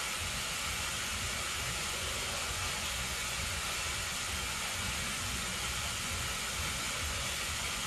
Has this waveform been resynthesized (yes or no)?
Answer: yes